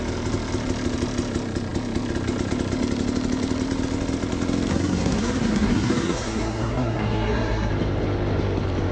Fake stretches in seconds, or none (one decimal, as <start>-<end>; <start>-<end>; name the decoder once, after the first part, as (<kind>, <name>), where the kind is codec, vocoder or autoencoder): 4.7-7.7 (codec, SNAC)